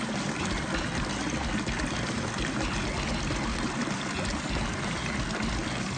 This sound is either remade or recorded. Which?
recorded